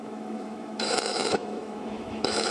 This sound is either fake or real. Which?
fake